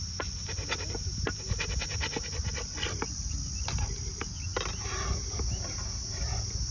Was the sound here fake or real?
real